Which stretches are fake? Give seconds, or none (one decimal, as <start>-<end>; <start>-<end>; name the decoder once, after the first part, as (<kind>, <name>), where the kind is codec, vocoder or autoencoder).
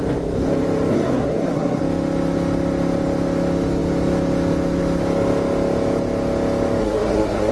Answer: 0.9-1.8 (codec, SNAC); 6.8-7.5